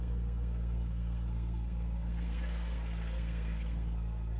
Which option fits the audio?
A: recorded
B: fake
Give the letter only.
B